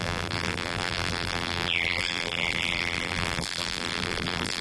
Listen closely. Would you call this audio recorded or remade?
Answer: remade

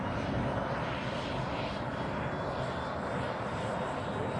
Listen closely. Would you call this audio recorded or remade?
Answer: recorded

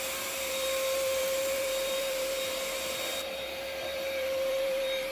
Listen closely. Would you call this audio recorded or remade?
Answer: remade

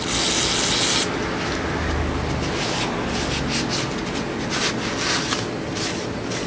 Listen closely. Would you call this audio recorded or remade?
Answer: recorded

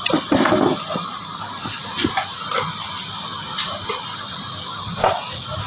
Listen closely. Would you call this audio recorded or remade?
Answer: remade